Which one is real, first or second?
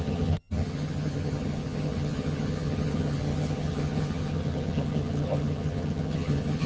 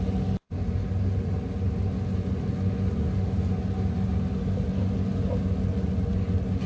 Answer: second